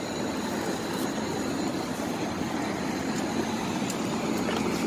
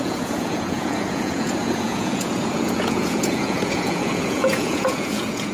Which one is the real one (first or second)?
first